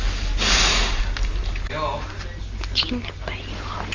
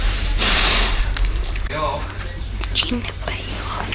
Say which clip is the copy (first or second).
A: second